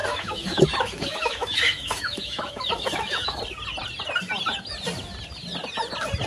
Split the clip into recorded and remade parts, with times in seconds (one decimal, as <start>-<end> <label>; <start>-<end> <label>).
0.0-3.4 remade; 3.4-6.3 recorded